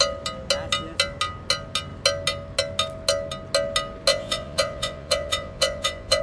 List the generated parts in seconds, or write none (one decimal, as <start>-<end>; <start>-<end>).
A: 4.1-6.2